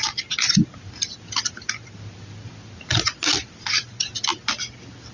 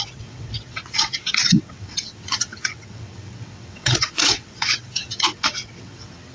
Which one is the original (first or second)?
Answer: first